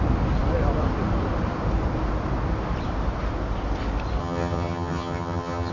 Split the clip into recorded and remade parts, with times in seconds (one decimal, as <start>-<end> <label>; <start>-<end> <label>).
0.0-4.2 recorded; 4.2-5.7 remade

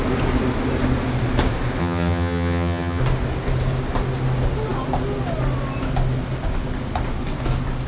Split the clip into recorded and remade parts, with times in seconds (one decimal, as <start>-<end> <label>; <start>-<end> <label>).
0.0-1.8 recorded; 1.8-3.0 remade; 3.0-7.9 recorded